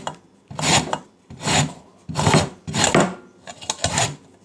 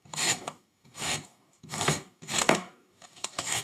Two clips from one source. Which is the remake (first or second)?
second